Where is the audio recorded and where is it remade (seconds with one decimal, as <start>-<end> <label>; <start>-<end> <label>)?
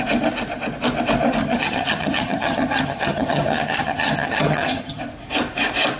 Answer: 0.0-1.4 recorded; 1.4-5.0 remade; 5.0-6.0 recorded